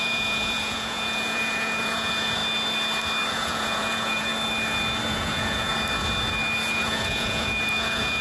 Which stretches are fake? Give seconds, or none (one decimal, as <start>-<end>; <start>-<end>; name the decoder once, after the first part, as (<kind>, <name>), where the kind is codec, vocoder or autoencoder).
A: 0.0-2.4 (vocoder, Vocos); 3.3-4.3; 5.1-5.7; 6.7-8.2